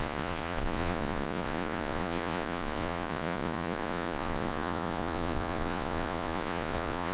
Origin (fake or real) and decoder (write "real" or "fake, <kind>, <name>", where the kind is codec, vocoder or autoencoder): fake, vocoder, Vocos